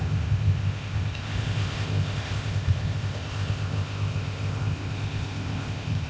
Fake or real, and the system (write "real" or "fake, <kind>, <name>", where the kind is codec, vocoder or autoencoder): fake, codec, ZipCodec